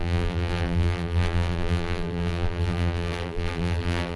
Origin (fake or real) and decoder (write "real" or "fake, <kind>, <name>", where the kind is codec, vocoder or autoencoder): fake, vocoder, BigVGAN v2